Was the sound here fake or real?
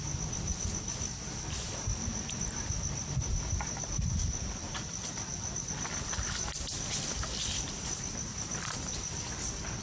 fake